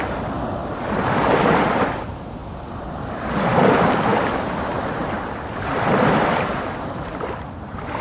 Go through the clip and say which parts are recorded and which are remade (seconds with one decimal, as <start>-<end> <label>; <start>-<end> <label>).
0.0-2.4 recorded; 2.4-3.1 remade; 3.1-4.1 recorded; 4.1-6.7 remade; 6.7-8.0 recorded